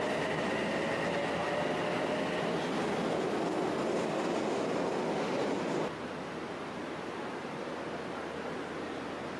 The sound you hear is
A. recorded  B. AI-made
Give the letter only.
A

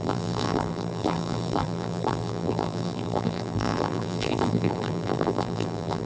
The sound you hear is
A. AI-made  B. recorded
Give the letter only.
A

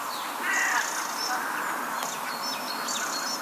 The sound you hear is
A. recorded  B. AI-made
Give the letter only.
A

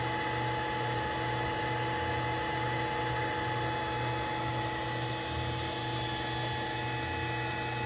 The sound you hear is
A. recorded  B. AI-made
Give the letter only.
A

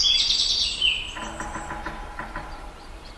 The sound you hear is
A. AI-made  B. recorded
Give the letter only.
B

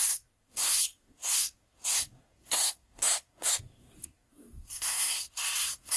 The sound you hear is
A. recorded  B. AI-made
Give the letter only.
B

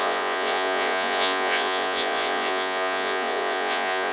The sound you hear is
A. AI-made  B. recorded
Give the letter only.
A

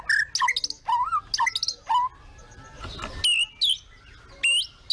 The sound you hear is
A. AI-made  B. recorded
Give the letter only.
B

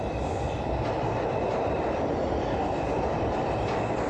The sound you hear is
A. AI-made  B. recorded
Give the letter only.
A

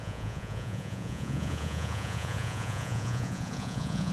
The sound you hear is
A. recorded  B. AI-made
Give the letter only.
B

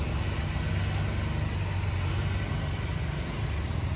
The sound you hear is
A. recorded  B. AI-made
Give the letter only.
A